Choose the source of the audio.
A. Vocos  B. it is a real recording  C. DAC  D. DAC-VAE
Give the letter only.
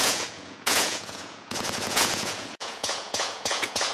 A